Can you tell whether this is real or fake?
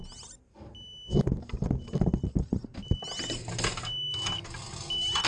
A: real